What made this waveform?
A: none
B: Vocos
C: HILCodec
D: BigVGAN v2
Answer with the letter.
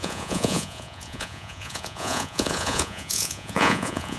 B